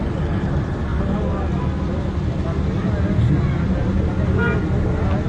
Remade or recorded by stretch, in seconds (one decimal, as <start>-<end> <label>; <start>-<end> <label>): 0.0-5.3 recorded